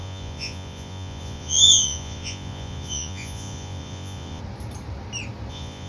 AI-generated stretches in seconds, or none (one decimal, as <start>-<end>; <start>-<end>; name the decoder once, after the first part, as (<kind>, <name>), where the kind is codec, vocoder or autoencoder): 0.0-4.4 (vocoder, Vocos); 5.5-5.9